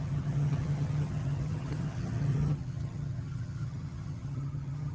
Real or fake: fake